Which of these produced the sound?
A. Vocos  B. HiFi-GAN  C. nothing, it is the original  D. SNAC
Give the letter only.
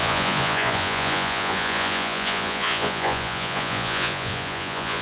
A